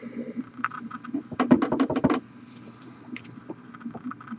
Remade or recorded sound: remade